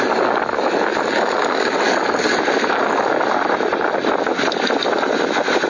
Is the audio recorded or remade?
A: recorded